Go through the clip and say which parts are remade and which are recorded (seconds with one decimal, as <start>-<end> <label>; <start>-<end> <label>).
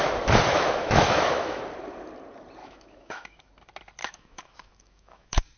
0.0-0.5 recorded; 0.5-1.6 remade; 1.6-2.6 recorded; 2.6-3.5 remade; 3.5-4.0 recorded; 4.0-5.6 remade